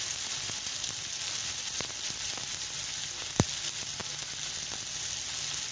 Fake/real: real